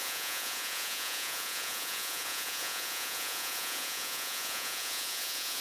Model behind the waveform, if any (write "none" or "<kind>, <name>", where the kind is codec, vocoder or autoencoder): vocoder, Vocos